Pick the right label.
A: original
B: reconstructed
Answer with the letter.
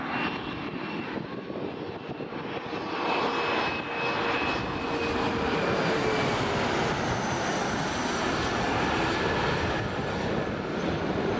A